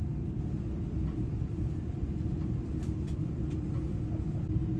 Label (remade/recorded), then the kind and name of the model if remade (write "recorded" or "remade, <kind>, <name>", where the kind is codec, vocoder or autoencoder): recorded